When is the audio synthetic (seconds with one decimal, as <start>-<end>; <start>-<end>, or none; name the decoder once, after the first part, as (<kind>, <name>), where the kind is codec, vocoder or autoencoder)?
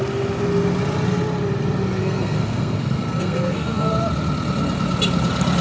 2.0-3.9 (codec, SNAC)